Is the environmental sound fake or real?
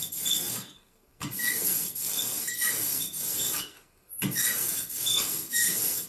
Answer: fake